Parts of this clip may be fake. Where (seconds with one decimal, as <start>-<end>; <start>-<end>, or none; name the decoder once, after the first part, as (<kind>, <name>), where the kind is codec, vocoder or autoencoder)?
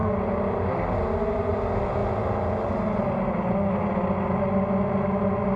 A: none